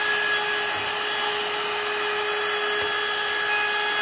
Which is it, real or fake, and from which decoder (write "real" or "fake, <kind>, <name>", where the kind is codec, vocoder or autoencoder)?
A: real